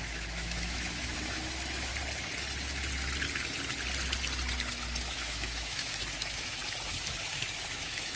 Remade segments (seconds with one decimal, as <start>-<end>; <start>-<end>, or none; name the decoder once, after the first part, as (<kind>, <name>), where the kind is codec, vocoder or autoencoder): 0.0-1.9 (autoencoder, DAC-VAE); 5.0-6.6; 7.3-8.2